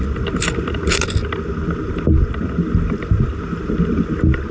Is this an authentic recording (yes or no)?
yes